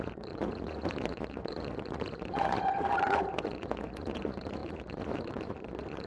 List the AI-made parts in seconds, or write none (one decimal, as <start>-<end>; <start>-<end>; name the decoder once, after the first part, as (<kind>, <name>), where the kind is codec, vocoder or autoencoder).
0.0-6.1 (vocoder, Vocos)